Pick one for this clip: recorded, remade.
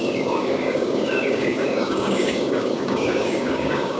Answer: remade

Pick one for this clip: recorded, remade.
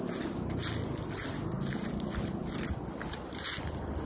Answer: recorded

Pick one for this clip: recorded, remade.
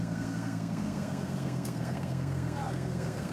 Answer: remade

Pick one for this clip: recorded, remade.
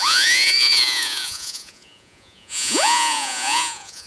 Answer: remade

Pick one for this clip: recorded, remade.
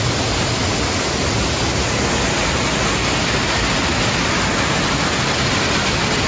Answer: recorded